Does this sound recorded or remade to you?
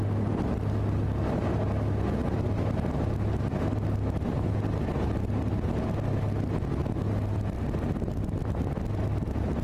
recorded